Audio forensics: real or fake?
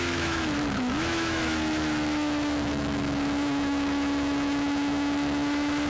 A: fake